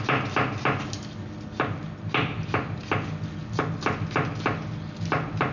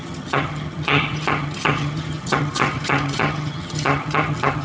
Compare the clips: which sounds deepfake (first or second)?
second